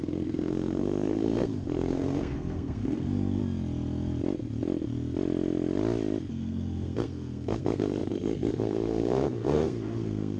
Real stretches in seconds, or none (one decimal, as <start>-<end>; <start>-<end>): 3.4-6.3